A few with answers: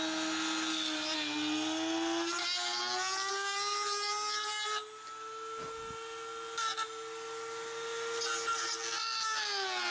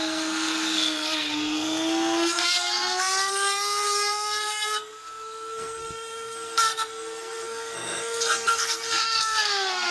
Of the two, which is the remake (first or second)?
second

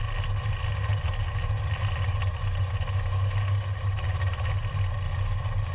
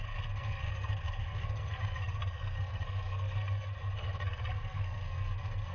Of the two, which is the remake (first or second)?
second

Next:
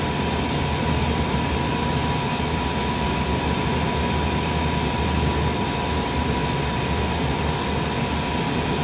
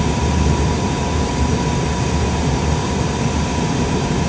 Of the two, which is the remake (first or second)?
second